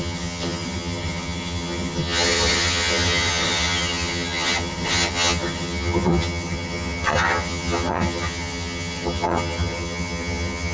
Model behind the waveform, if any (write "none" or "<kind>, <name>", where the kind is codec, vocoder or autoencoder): vocoder, HiFi-GAN